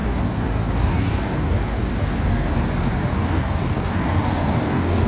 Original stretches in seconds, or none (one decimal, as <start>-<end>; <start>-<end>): 2.5-3.1